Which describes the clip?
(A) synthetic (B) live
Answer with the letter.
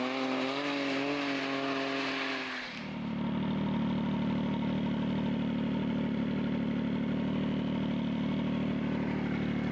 B